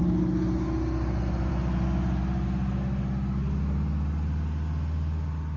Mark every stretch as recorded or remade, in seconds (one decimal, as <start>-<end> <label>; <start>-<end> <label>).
0.0-5.6 recorded